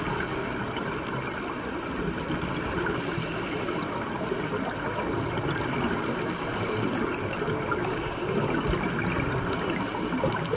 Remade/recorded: recorded